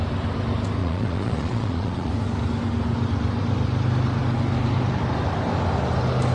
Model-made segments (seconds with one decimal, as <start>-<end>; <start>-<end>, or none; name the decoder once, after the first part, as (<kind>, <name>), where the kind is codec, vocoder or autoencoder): 0.8-2.1 (vocoder, Vocos)